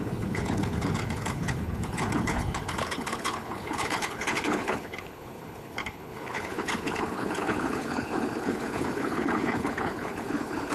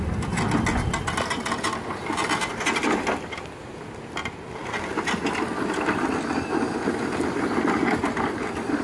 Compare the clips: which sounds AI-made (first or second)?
first